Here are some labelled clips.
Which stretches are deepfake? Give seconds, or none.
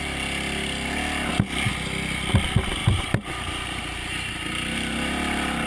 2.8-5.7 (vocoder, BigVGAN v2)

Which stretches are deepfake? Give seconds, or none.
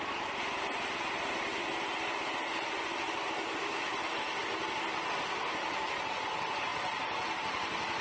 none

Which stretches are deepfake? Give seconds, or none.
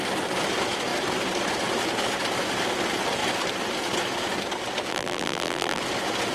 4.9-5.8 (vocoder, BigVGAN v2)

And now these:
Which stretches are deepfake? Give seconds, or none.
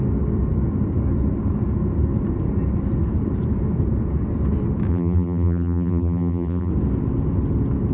4.9-6.7 (vocoder, BigVGAN v2)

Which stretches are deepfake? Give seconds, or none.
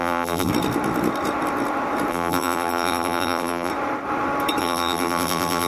0.0-0.5 (vocoder, BigVGAN v2); 2.1-3.7; 4.6-5.7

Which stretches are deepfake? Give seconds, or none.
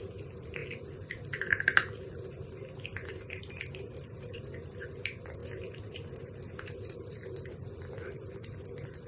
0.0-5.4 (vocoder, BigVGAN v2); 6.2-9.1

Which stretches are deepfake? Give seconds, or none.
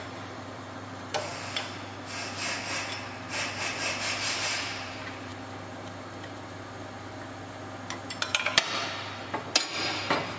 0.0-1.3 (vocoder, BigVGAN v2); 4.1-5.3; 8.3-10.4